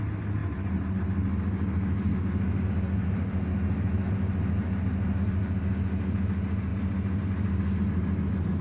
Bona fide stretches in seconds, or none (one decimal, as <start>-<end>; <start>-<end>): 0.0-8.6